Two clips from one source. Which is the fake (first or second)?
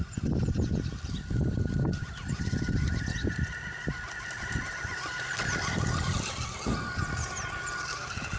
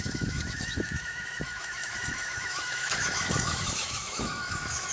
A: second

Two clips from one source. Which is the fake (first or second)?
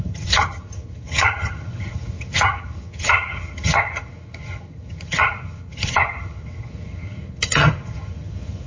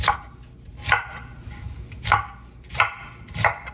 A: first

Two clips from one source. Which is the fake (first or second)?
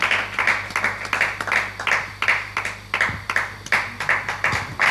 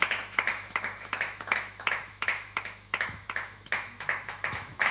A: second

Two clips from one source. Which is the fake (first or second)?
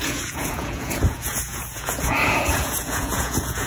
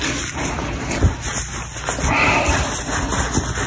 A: first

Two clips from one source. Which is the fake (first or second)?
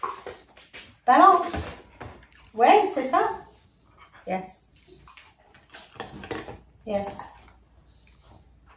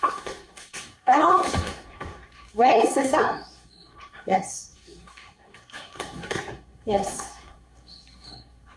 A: second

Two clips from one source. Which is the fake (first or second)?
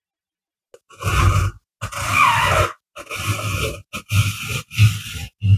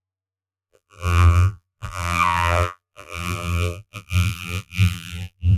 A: second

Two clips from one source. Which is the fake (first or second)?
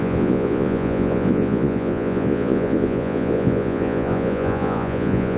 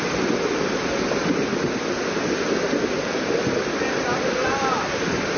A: first